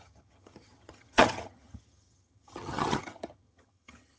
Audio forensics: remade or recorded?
remade